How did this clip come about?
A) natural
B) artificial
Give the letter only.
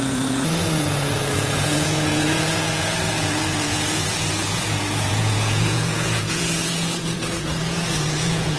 B